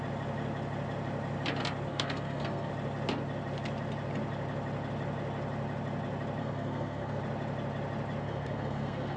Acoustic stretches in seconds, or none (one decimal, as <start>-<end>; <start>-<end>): 0.0-1.9; 2.7-6.4; 7.2-8.2